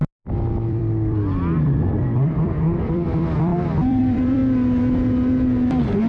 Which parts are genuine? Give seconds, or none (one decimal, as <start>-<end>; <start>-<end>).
0.0-0.7; 4.4-6.1